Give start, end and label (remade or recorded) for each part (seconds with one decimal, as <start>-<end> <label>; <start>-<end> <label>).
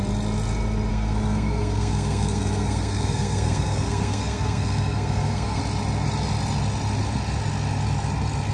0.0-0.9 recorded; 0.9-5.6 remade; 5.6-8.5 recorded